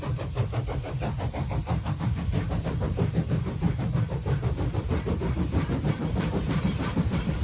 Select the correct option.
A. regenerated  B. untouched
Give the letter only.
A